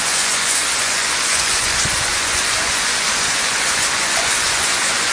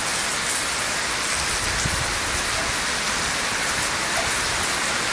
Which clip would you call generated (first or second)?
first